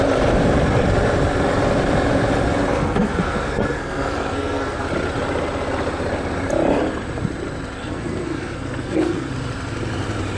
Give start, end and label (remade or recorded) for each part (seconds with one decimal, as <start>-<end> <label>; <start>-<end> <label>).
0.0-2.7 recorded; 2.7-4.8 remade; 4.8-7.8 recorded; 7.8-9.3 remade; 9.3-10.4 recorded